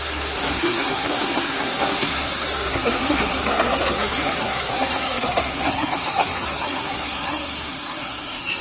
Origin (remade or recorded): remade